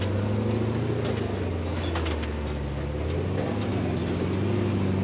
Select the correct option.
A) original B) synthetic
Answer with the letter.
A